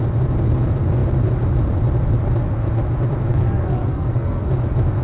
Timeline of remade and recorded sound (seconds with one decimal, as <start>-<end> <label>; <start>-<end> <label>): 0.0-3.3 recorded; 3.3-4.5 remade; 4.5-5.0 recorded

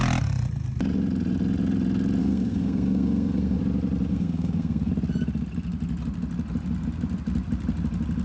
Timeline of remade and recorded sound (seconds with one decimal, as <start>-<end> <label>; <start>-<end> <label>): 0.0-2.2 recorded; 2.2-3.6 remade; 3.6-4.1 recorded; 4.1-4.9 remade; 4.9-8.2 recorded

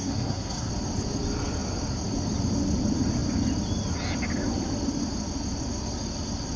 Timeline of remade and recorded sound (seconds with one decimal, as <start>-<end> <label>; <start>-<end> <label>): 0.0-0.7 remade; 0.7-6.6 recorded